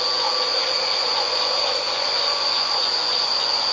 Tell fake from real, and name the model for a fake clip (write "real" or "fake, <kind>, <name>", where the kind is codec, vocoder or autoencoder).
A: fake, vocoder, Vocos